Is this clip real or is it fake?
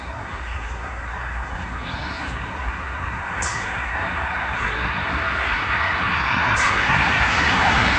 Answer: fake